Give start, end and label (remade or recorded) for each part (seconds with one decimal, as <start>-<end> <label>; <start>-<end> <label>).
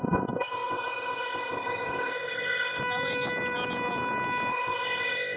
0.0-2.8 remade; 2.8-4.5 recorded; 4.5-5.4 remade